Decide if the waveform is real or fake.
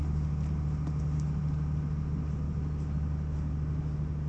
real